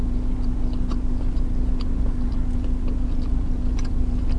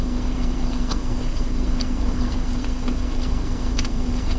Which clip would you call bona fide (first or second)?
first